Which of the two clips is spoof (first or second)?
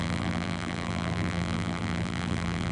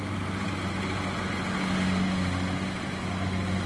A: first